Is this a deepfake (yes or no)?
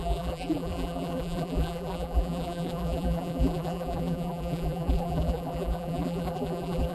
yes